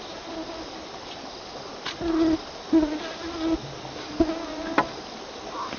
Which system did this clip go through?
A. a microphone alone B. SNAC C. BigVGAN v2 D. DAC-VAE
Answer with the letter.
A